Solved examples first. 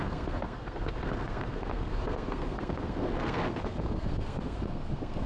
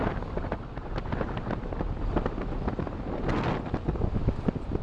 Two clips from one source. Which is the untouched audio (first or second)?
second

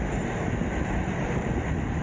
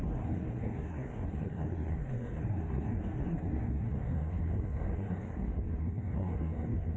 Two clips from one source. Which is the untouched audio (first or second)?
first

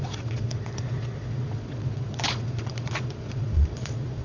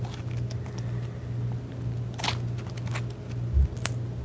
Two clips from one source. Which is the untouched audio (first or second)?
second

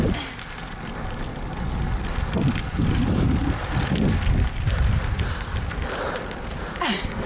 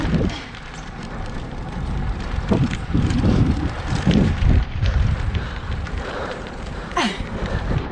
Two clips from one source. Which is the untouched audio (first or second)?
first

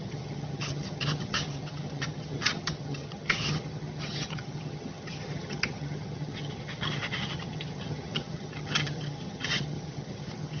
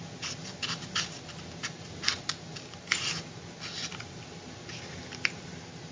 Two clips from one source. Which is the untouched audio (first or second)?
second